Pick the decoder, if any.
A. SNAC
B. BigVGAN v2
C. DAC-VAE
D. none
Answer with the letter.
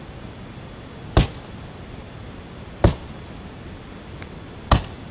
D